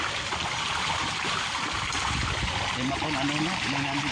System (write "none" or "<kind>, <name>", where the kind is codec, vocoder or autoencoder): none